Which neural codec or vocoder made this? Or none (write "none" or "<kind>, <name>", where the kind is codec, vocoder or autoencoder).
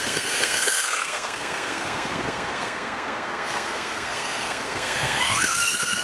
codec, SNAC